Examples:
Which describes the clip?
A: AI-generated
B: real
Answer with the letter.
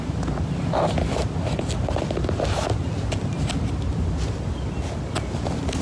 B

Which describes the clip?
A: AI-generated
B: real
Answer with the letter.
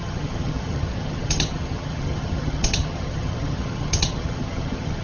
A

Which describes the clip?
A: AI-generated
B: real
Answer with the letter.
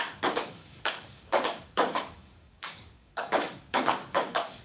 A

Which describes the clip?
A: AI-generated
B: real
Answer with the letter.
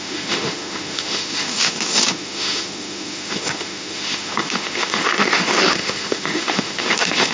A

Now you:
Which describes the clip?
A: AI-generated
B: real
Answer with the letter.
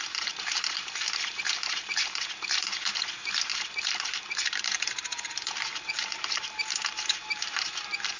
A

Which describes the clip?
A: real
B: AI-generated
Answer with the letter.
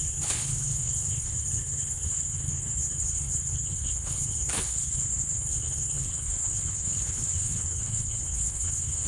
B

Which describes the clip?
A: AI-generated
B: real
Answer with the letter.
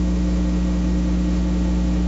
A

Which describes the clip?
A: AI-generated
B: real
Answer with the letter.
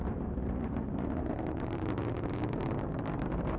A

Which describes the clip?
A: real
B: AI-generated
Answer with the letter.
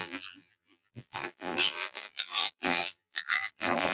B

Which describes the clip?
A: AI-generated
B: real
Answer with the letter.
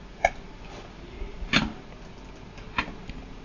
B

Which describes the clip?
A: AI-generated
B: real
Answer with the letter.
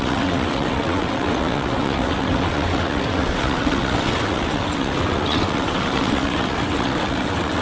A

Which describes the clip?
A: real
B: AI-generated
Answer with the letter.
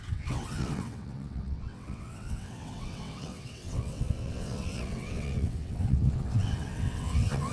B